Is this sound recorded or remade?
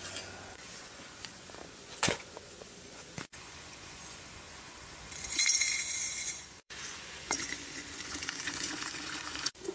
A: remade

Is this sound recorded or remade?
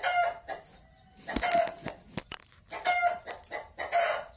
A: recorded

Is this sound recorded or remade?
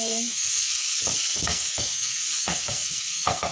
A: remade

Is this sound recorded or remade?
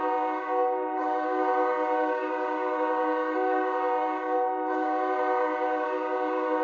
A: remade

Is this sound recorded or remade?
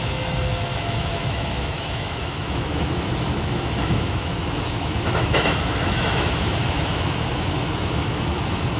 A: remade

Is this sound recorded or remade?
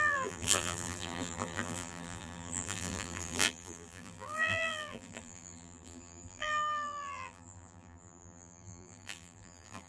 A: remade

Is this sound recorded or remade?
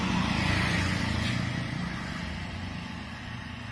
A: remade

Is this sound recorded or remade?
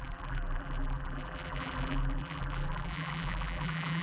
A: remade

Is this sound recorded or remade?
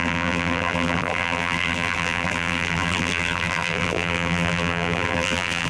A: remade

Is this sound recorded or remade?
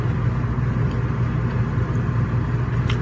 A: recorded